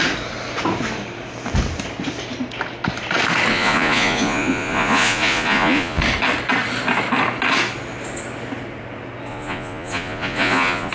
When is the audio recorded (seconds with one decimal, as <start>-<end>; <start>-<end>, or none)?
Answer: 0.0-3.5; 6.0-9.3